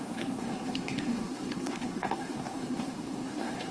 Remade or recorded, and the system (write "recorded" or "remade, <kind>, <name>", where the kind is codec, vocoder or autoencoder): remade, codec, SNAC